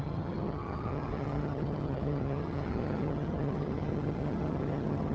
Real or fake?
fake